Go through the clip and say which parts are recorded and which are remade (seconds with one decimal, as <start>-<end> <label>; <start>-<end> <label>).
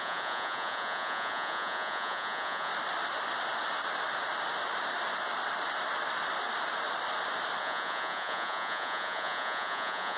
0.0-2.7 remade; 2.7-7.6 recorded; 7.6-10.2 remade